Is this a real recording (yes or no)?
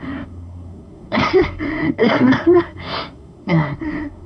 no